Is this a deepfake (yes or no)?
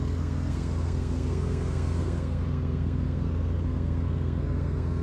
yes